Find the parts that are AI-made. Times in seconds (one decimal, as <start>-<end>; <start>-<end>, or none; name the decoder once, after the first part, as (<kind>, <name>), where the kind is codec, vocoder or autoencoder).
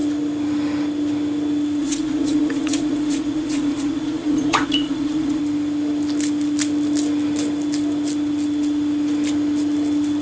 1.8-5.4 (vocoder, Vocos)